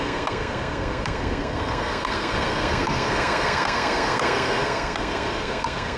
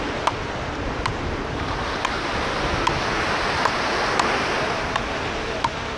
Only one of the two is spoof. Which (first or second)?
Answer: first